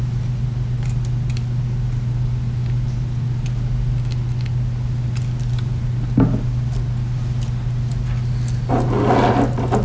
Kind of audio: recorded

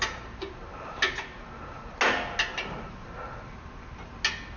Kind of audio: recorded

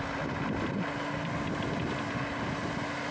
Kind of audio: recorded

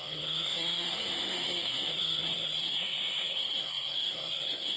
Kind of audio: remade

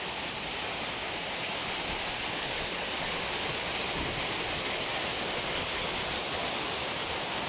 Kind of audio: recorded